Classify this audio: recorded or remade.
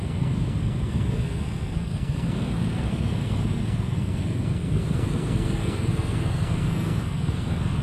remade